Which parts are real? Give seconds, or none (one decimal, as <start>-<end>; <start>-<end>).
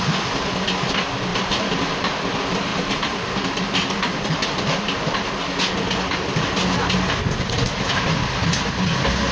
0.0-1.3; 2.2-2.7; 5.3-9.3